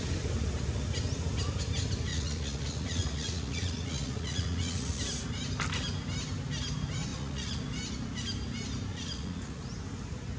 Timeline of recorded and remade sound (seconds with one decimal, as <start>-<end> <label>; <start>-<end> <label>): 0.0-2.1 recorded; 2.1-5.0 remade; 5.0-7.1 recorded; 7.1-7.6 remade; 7.6-8.9 recorded; 8.9-9.6 remade; 9.6-10.4 recorded

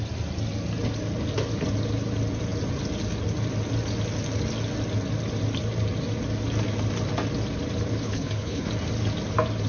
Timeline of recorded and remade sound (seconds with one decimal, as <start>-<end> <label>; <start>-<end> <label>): 0.0-8.0 recorded; 8.0-8.7 remade; 8.7-9.7 recorded

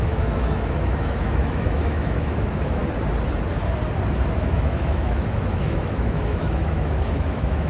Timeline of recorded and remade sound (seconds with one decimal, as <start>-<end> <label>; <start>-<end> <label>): 0.0-2.8 remade; 2.8-4.5 recorded; 4.5-7.7 remade

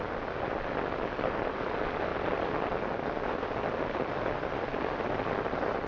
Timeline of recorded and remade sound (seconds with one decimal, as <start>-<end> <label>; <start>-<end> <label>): 0.0-5.9 recorded

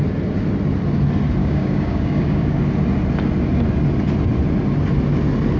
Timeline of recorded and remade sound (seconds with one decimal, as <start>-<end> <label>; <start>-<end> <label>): 0.0-1.4 recorded; 1.4-2.6 remade; 2.6-5.6 recorded

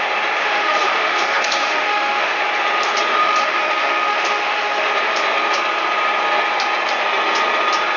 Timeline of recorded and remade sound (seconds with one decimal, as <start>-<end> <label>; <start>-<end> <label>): 0.0-0.4 recorded; 0.4-2.4 remade; 2.4-3.2 recorded; 3.2-4.9 remade; 4.9-8.0 recorded

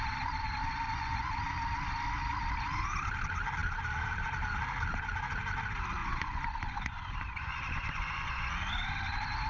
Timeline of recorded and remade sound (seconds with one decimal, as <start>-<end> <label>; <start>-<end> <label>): 0.0-0.6 recorded; 0.6-1.3 remade; 1.3-6.0 recorded; 6.0-8.5 remade; 8.5-9.5 recorded

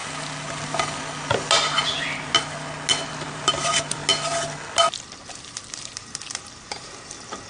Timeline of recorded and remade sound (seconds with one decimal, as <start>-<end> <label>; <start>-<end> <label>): 0.0-3.1 recorded; 3.1-4.0 remade; 4.0-5.4 recorded; 5.4-7.5 remade